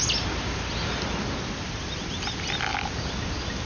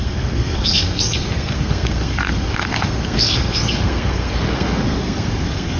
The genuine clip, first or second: first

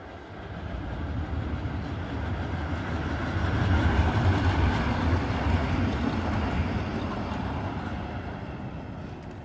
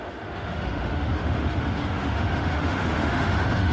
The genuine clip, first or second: first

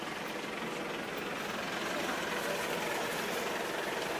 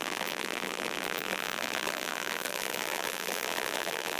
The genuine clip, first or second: first